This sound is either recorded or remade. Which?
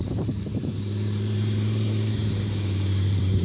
remade